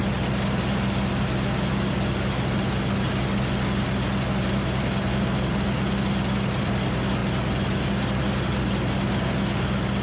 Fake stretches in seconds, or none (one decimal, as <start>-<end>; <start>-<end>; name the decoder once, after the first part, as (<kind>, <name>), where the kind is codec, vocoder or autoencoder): none